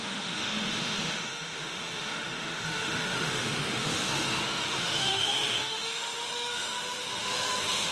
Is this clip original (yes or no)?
no